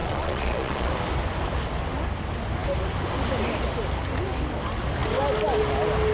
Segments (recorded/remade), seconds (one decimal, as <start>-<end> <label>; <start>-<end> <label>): 0.0-0.9 remade; 0.9-6.1 recorded